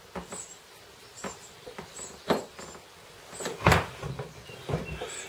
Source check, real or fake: real